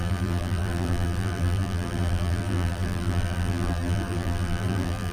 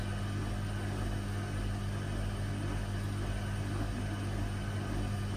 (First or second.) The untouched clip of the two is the second